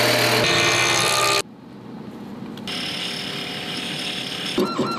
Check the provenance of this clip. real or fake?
real